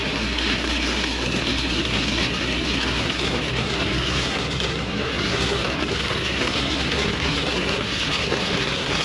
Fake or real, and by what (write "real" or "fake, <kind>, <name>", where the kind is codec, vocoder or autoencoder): fake, codec, SNAC